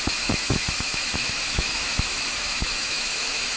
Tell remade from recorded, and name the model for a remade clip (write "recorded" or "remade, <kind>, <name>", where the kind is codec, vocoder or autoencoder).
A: remade, autoencoder, DAC-VAE